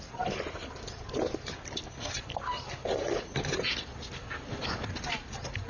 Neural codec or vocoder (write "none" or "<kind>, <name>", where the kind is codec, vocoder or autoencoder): none